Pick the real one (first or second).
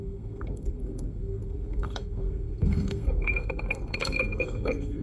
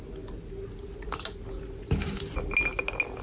second